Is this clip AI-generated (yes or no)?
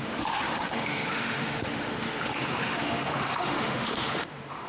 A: yes